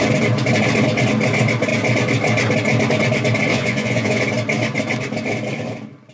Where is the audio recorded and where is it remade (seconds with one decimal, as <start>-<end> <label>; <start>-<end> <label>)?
0.0-3.5 recorded; 3.5-4.2 remade; 4.2-6.1 recorded